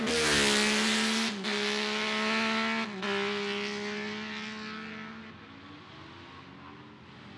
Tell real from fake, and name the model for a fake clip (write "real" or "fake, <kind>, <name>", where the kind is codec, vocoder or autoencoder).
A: real